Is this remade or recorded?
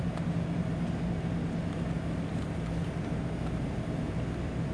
recorded